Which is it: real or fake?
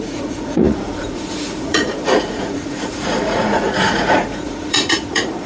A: fake